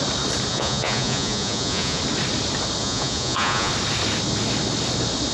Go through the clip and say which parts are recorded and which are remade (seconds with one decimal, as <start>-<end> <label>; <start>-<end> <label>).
0.0-0.5 recorded; 0.5-2.0 remade; 2.0-2.8 recorded; 2.8-3.7 remade; 3.7-5.3 recorded